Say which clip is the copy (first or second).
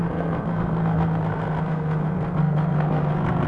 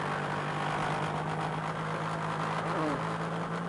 first